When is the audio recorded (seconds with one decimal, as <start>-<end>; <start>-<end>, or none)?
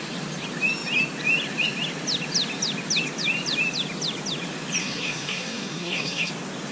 0.0-4.8; 6.3-6.7